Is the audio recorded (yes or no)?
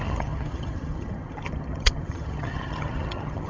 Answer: no